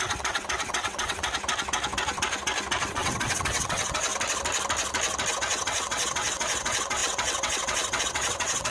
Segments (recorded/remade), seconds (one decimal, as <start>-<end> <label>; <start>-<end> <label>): 0.0-1.3 remade; 1.3-2.9 recorded; 2.9-4.1 remade; 4.1-5.3 recorded; 5.3-8.7 remade